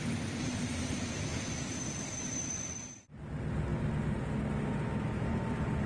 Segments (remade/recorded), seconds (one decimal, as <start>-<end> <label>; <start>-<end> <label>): 0.0-5.9 recorded